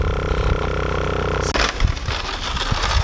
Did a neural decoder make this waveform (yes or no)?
no